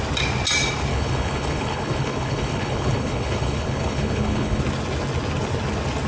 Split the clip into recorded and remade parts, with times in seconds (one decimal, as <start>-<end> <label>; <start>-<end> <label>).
0.0-0.9 recorded; 0.9-4.6 remade; 4.6-6.1 recorded